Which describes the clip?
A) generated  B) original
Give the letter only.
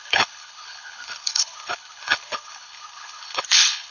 A